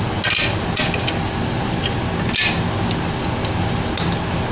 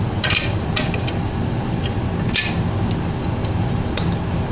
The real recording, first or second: first